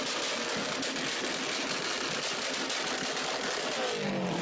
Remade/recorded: recorded